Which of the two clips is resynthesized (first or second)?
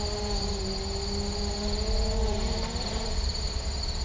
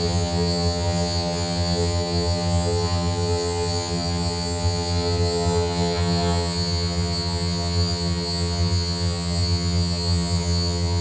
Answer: second